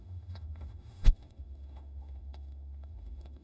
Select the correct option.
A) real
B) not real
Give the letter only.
B